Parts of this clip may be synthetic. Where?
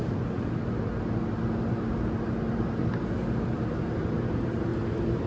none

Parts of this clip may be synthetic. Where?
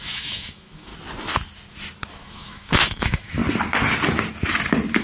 0.0-0.9 (autoencoder, DAC-VAE); 2.1-3.4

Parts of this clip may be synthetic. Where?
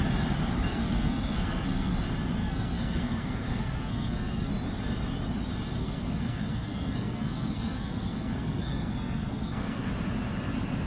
0.7-1.9 (codec, SNAC); 2.4-4.5; 5.8-9.9